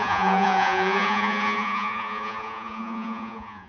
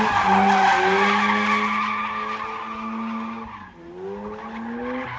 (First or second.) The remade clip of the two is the first